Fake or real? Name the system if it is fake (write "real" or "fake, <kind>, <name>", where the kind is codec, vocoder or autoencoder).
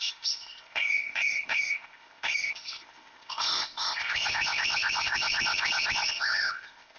fake, codec, ZipCodec